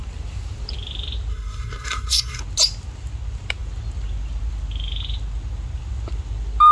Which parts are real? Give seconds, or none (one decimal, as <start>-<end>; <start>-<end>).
0.0-1.3; 2.4-6.7